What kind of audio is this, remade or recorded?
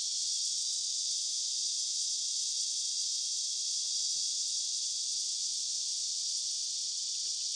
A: remade